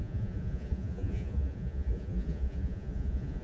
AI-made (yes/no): yes